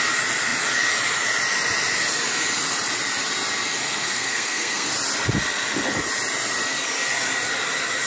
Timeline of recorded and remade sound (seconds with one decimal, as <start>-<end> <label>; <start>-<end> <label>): 0.0-3.8 recorded; 3.8-4.9 remade; 4.9-8.1 recorded